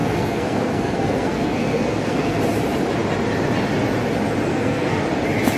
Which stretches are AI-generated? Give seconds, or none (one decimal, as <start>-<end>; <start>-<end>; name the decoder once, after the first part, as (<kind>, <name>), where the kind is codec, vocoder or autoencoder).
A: 0.0-2.4 (codec, SNAC); 4.5-5.0